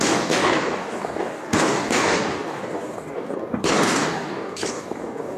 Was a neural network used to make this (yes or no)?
yes